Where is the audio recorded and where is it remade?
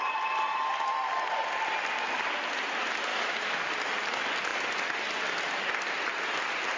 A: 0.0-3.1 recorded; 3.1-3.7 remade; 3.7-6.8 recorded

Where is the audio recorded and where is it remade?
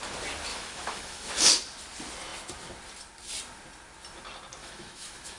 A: 0.0-0.5 recorded; 0.5-1.3 remade; 1.3-4.6 recorded; 4.6-5.4 remade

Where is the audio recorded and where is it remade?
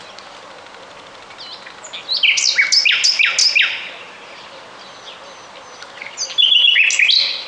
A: 0.0-7.5 recorded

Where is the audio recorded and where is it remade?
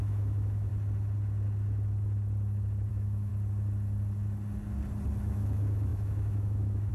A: 0.0-0.7 remade; 0.7-2.9 recorded; 2.9-3.3 remade; 3.3-5.2 recorded; 5.2-6.9 remade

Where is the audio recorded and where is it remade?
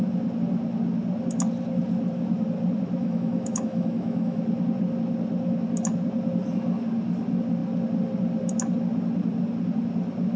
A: 0.0-3.0 recorded; 3.0-4.4 remade; 4.4-10.4 recorded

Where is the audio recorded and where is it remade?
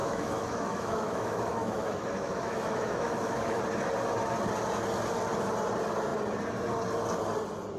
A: 0.0-3.6 remade; 3.6-7.8 recorded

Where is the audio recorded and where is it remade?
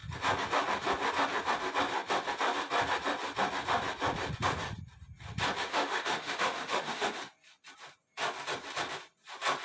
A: 0.0-5.7 recorded; 5.7-7.2 remade; 7.2-9.6 recorded